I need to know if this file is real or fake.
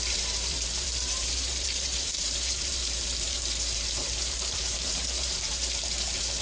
fake